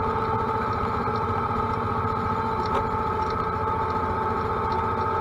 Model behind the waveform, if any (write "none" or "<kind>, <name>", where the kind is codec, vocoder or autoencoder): none